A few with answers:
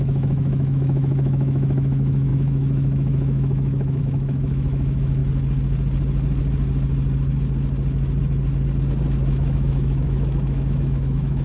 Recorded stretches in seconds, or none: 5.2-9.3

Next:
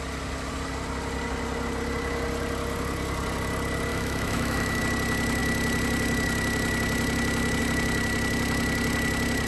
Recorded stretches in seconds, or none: 0.0-3.9; 4.8-9.5

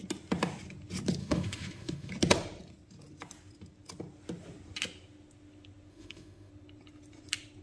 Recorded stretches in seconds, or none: 0.0-1.2; 2.1-5.9; 6.5-7.6

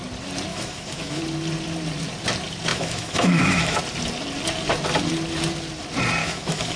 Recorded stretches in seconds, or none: 0.0-0.5; 1.2-2.7; 3.8-6.2

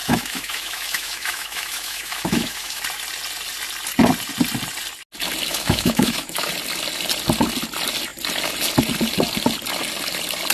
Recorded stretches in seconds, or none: 2.8-5.5; 6.5-10.5

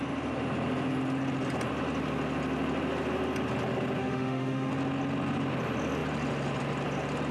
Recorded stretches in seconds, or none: 0.0-4.0; 4.7-7.3

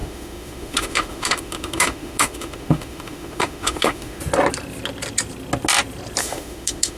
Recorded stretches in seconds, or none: 4.2-6.2

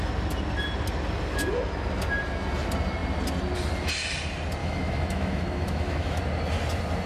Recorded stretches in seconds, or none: 0.0-4.6; 6.2-7.1